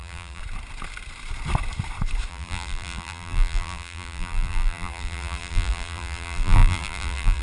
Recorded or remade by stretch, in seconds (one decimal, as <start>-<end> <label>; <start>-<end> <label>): 0.0-0.4 remade; 0.4-2.3 recorded; 2.3-7.4 remade